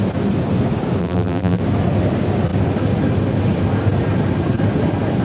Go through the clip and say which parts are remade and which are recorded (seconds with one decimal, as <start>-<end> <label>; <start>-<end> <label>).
0.0-1.0 recorded; 1.0-1.6 remade; 1.6-5.2 recorded